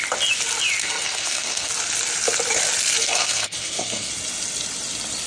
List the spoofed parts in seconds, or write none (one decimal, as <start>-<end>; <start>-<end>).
0.8-1.7; 3.0-4.1